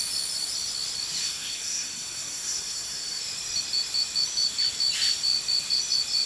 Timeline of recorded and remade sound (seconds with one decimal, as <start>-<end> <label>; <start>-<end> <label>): 0.0-1.2 recorded; 1.2-3.2 remade; 3.2-6.3 recorded